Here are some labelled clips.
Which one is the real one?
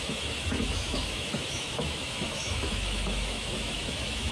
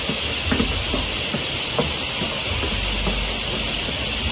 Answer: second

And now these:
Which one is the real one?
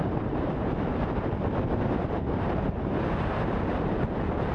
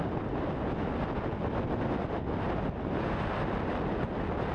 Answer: second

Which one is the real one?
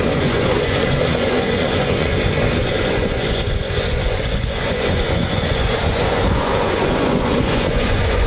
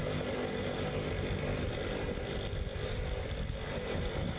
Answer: second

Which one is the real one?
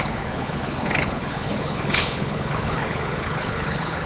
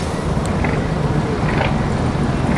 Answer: second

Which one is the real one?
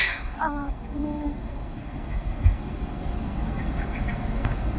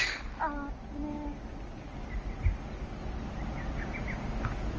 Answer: second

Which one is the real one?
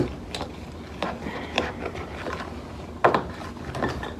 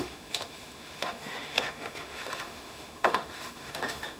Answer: first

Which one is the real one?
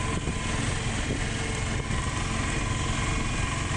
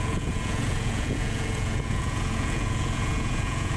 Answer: first